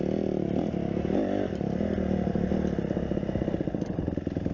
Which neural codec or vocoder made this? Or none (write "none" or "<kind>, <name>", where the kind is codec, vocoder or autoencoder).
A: none